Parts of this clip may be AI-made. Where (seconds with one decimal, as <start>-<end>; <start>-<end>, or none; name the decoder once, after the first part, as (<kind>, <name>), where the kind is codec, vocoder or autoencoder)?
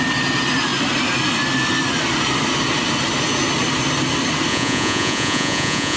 4.5-6.0 (vocoder, Vocos)